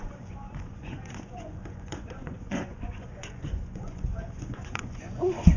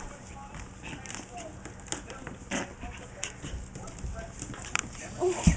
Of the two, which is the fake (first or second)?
first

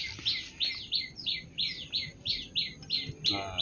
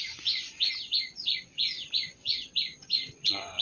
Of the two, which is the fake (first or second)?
second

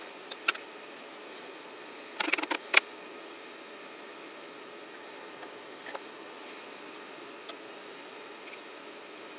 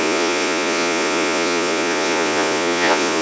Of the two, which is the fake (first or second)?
second